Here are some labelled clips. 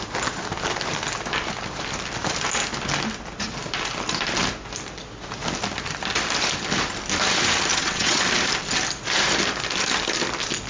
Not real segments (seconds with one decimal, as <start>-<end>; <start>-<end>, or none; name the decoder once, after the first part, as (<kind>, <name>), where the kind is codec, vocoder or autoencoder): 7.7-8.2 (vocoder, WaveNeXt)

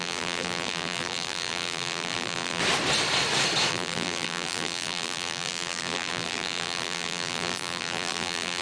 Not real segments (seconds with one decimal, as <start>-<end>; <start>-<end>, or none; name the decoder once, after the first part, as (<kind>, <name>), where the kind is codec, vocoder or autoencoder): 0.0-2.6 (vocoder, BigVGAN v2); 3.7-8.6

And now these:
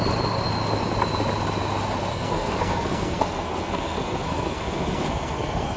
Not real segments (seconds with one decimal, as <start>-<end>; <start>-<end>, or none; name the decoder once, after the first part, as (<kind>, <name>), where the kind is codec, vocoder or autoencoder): 2.1-5.8 (codec, SNAC)

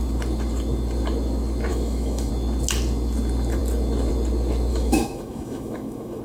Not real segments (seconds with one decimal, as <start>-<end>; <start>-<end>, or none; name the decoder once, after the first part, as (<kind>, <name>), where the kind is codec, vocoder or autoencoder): 1.7-2.3 (autoencoder, DAC-VAE); 4.7-6.2

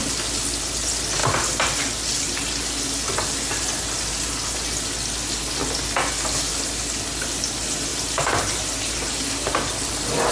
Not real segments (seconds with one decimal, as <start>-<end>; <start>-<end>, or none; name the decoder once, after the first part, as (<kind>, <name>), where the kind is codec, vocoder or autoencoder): 7.9-10.3 (vocoder, BigVGAN v2)

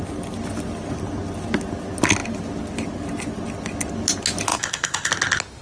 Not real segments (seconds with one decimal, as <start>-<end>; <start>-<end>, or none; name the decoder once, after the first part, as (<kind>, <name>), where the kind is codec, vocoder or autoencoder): 4.5-5.1 (autoencoder, DAC-VAE)

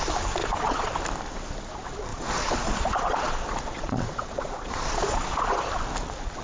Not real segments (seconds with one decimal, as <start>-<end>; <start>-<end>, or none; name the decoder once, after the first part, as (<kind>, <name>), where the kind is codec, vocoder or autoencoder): 0.4-0.9 (vocoder, Vocos); 2.1-5.7

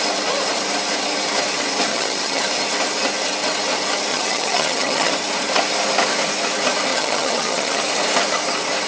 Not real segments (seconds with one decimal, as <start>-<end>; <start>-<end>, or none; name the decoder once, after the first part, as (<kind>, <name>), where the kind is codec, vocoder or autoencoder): 1.9-2.4 (vocoder, HiFi-GAN); 4.1-5.1; 6.9-7.8